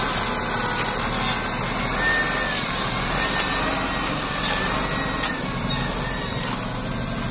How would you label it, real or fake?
real